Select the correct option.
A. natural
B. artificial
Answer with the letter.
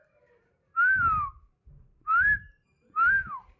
B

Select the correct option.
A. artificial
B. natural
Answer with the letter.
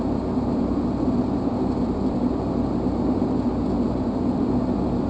A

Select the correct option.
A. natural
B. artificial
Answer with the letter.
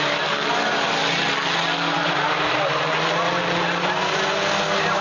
A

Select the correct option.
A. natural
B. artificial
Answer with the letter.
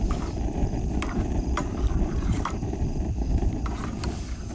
B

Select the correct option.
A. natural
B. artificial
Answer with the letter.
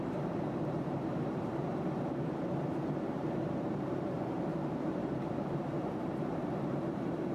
B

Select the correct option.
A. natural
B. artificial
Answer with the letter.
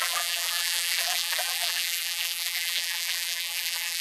B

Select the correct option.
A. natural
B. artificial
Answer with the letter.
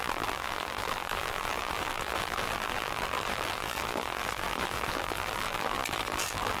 B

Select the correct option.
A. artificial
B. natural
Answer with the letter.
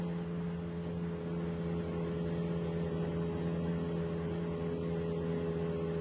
B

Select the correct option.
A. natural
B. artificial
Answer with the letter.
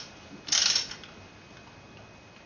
A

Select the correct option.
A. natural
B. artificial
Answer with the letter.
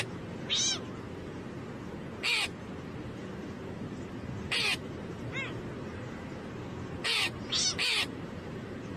A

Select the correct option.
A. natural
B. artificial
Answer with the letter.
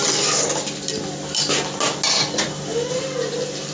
A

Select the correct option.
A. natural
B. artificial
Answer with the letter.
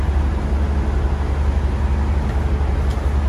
A